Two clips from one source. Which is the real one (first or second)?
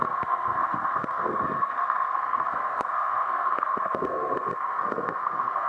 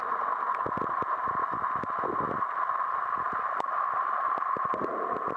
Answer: second